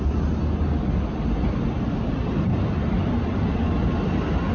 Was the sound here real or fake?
real